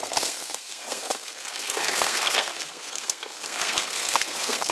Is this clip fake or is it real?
fake